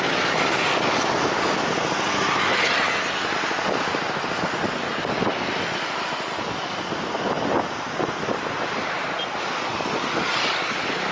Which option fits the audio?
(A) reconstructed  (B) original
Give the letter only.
B